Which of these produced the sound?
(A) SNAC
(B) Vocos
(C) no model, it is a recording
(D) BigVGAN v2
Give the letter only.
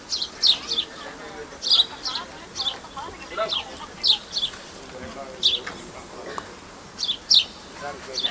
C